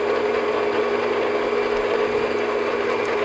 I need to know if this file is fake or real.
real